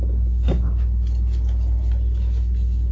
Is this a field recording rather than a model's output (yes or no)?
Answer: yes